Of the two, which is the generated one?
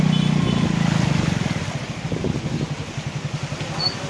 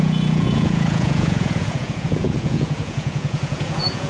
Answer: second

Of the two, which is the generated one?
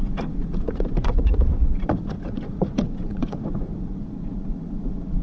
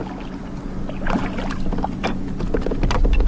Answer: first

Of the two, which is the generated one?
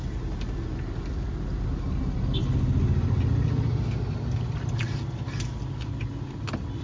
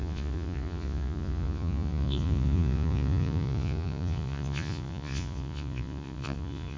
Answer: second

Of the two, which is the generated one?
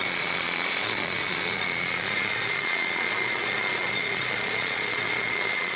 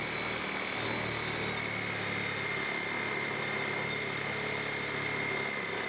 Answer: first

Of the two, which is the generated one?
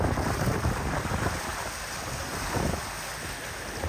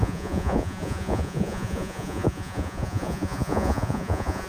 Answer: second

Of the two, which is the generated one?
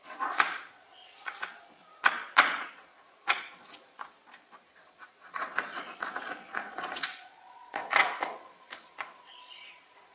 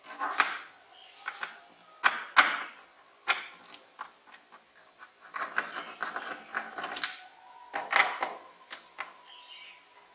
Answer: first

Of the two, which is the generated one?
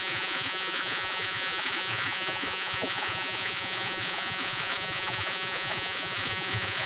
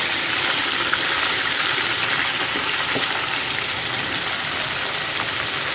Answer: first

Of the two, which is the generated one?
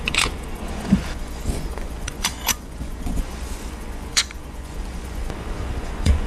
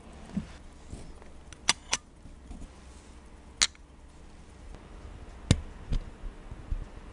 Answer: first